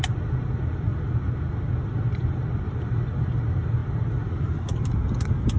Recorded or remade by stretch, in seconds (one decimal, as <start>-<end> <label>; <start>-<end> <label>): 0.0-5.6 recorded